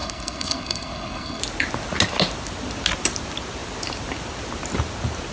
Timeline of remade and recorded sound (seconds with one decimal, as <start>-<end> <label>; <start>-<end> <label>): 0.0-1.4 remade; 1.4-5.3 recorded